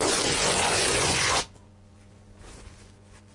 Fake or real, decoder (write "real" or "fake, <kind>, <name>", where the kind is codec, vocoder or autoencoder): fake, vocoder, Vocos